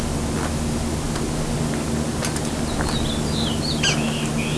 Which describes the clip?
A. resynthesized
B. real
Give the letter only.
B